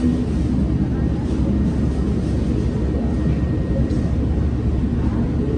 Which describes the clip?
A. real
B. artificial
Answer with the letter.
A